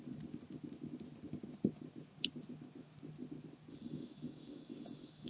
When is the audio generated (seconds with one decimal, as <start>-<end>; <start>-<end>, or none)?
3.7-5.3